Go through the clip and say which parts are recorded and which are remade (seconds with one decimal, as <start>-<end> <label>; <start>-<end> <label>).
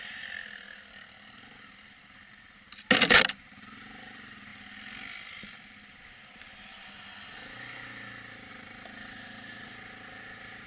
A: 0.0-10.7 recorded